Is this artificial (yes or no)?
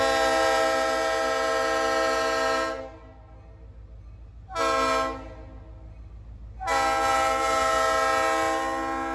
no